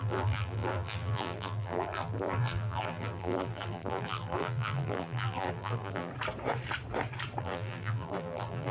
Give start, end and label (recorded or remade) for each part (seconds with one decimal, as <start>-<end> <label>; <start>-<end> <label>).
0.0-6.1 remade; 6.1-7.4 recorded; 7.4-8.7 remade